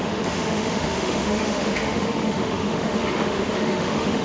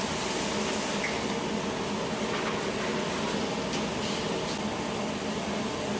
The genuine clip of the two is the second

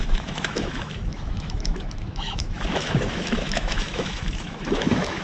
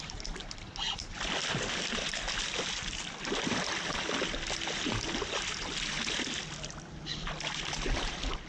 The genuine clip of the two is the second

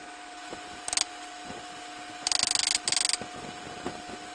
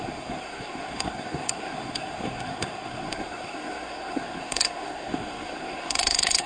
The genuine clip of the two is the first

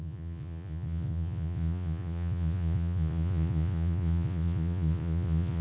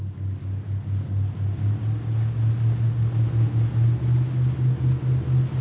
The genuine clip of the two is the second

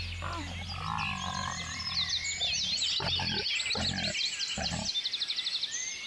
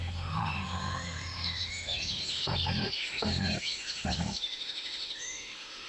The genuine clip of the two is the first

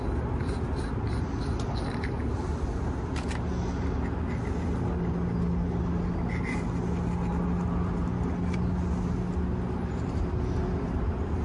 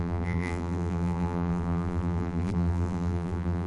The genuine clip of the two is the first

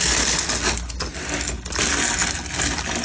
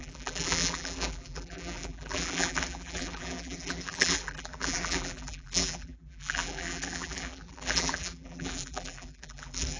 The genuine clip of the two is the first